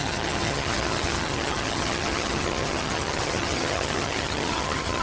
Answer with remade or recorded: remade